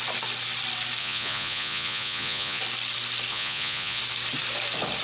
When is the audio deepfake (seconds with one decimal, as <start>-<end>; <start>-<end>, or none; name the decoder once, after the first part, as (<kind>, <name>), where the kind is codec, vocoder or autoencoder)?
1.0-2.6 (vocoder, Vocos); 3.3-4.0